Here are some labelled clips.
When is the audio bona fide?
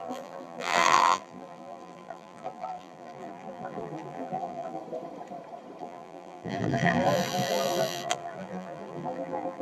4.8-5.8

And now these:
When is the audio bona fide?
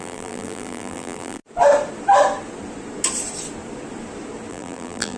1.4-4.5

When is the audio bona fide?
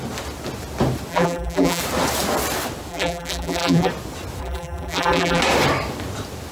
0.0-1.1; 1.8-2.9; 3.9-4.4; 5.4-6.5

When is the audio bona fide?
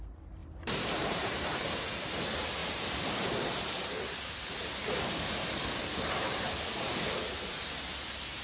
0.0-0.4; 1.7-2.6; 6.9-8.4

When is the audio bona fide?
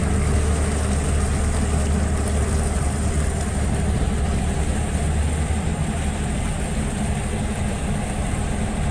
0.0-8.9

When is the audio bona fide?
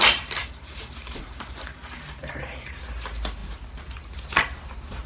0.0-0.4; 2.8-5.1